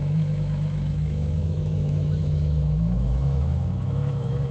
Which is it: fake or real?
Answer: fake